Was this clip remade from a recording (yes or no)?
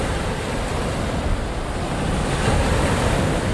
no